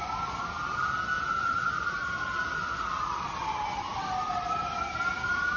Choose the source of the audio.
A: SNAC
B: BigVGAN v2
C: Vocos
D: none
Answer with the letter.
D